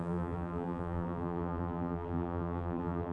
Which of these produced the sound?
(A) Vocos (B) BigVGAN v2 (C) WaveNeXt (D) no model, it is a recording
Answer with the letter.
B